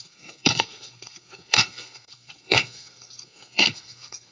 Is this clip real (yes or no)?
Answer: no